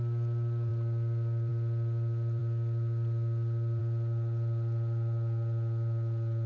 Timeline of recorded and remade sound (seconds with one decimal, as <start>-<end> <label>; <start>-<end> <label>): 0.0-6.5 recorded